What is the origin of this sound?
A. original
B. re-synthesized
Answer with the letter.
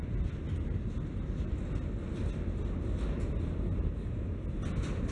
A